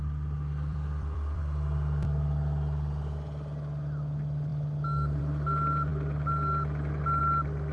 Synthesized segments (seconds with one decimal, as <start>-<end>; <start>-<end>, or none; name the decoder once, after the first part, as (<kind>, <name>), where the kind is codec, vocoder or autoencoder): 0.7-1.4 (vocoder, BigVGAN v2)